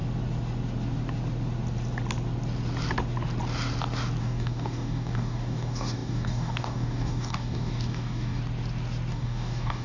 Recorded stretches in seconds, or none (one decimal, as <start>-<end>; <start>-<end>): 0.0-4.2; 8.4-9.1